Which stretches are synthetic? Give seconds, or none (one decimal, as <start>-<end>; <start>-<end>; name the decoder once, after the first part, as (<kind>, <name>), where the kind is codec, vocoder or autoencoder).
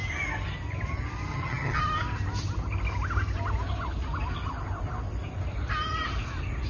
1.3-1.8 (vocoder, HiFi-GAN)